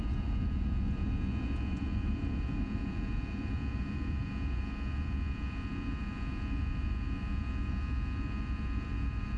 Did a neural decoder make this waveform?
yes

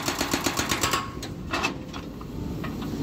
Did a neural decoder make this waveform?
no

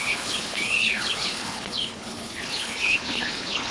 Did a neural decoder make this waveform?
yes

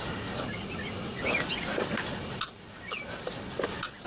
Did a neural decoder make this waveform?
no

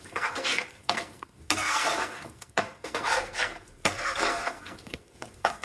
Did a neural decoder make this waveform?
yes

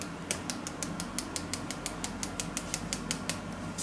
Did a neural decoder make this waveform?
no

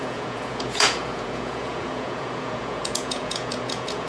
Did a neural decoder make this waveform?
yes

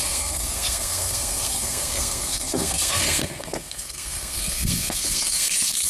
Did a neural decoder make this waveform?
yes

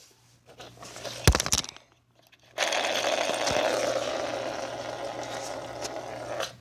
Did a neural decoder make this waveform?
no